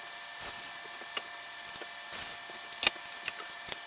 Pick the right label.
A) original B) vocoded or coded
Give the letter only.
A